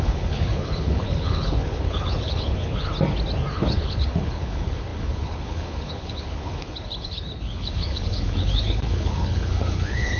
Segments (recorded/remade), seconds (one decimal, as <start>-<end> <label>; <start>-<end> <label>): 0.0-2.9 remade; 2.9-3.5 recorded; 3.5-10.2 remade

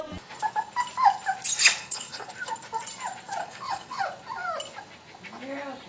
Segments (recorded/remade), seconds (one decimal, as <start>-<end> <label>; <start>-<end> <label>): 0.0-1.8 recorded; 1.8-2.3 remade; 2.3-3.4 recorded; 3.4-4.0 remade; 4.0-5.9 recorded

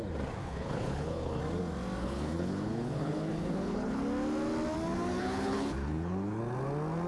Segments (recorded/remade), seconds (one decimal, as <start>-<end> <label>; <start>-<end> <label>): 0.0-0.4 recorded; 0.4-1.4 remade; 1.4-2.0 recorded; 2.0-4.0 remade; 4.0-5.2 recorded; 5.2-6.4 remade; 6.4-7.1 recorded

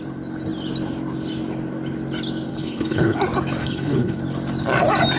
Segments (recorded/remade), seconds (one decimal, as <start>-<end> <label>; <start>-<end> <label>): 0.0-2.5 recorded; 2.5-3.2 remade; 3.2-3.6 recorded; 3.6-4.2 remade; 4.2-5.2 recorded

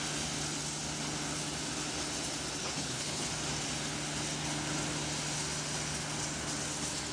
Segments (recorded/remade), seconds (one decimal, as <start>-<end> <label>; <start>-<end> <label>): 0.0-2.6 recorded; 2.6-3.3 remade; 3.3-7.1 recorded

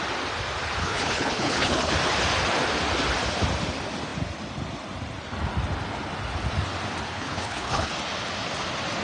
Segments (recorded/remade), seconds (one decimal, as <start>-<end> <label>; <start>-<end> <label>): 0.0-0.8 recorded; 0.8-1.9 remade; 1.9-7.1 recorded; 7.1-7.9 remade; 7.9-9.0 recorded

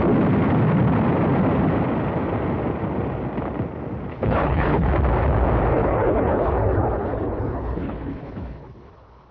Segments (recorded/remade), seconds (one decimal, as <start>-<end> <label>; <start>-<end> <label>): 0.0-4.1 recorded; 4.1-4.9 remade; 4.9-5.7 recorded; 5.7-9.3 remade

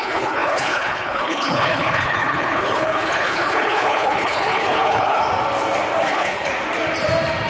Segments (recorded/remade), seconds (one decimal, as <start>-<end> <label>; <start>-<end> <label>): 0.0-5.2 remade; 5.2-6.1 recorded; 6.1-6.5 remade; 6.5-7.5 recorded